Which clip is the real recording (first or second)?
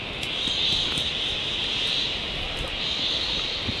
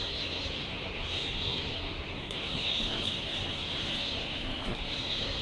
first